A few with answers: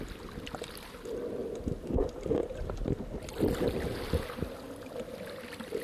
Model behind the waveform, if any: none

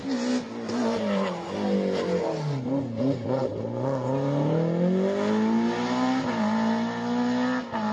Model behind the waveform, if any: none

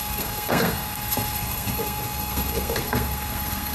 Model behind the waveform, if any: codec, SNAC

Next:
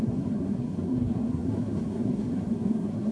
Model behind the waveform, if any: codec, SNAC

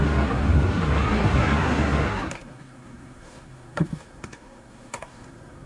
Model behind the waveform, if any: codec, SNAC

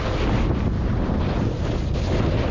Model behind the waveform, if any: none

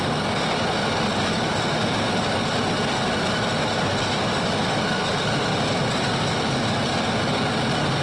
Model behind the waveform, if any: none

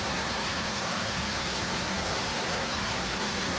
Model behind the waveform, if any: codec, SNAC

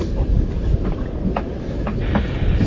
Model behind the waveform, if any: none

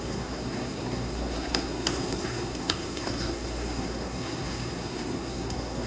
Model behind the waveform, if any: codec, SNAC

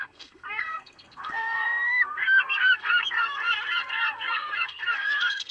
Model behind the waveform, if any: codec, SNAC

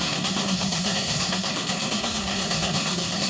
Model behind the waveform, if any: codec, SNAC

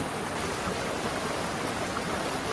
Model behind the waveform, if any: none